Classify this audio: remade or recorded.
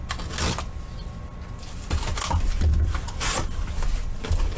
recorded